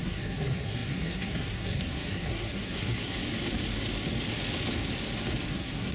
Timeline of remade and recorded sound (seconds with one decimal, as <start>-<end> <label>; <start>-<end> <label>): 0.0-3.2 remade; 3.2-5.5 recorded; 5.5-5.9 remade